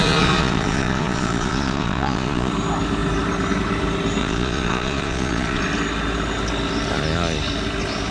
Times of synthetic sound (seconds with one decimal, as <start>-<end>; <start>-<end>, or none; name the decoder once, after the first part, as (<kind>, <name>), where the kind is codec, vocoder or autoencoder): 0.0-2.5 (vocoder, Vocos); 4.2-5.6